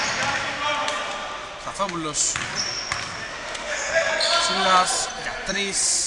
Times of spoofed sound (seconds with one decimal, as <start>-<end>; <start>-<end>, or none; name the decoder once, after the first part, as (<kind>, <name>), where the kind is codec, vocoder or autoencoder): 3.3-4.1 (autoencoder, DAC-VAE)